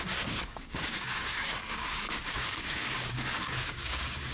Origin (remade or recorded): remade